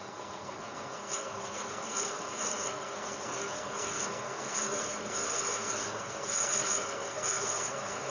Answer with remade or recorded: remade